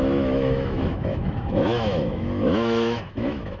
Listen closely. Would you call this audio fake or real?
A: fake